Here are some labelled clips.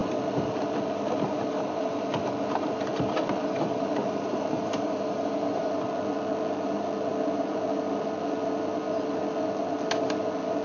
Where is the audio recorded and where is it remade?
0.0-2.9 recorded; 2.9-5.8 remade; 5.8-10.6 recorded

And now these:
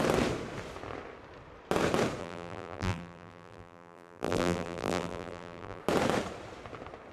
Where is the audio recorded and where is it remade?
0.0-2.2 recorded; 2.2-5.8 remade; 5.8-7.1 recorded

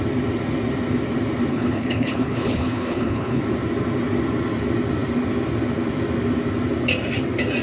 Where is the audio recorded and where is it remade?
0.0-1.5 recorded; 1.5-3.4 remade; 3.4-7.6 recorded

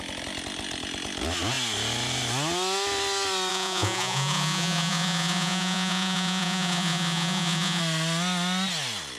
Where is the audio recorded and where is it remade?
0.0-3.5 recorded; 3.5-7.8 remade; 7.8-9.2 recorded

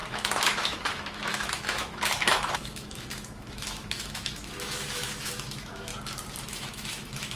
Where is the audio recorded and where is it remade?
0.0-5.9 remade; 5.9-6.5 recorded; 6.5-7.4 remade

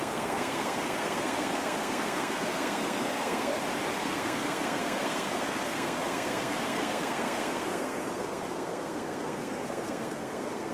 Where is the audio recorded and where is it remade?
0.0-3.5 remade; 3.5-4.0 recorded; 4.0-10.7 remade

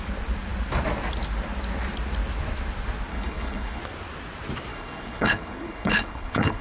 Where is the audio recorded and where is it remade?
0.0-3.1 recorded; 3.1-3.8 remade; 3.8-4.7 recorded; 4.7-6.6 remade